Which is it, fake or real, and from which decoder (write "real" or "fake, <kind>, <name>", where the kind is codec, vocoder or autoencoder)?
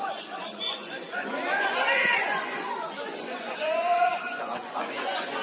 fake, vocoder, Vocos